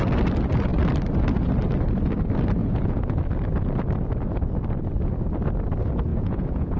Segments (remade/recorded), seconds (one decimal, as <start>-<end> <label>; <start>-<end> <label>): 0.0-2.6 recorded; 2.6-3.2 remade; 3.2-6.1 recorded; 6.1-6.8 remade